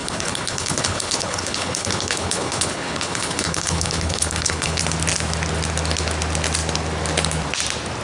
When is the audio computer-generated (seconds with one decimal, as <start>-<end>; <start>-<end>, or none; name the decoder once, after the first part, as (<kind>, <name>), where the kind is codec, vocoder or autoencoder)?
0.0-4.8 (codec, HILCodec)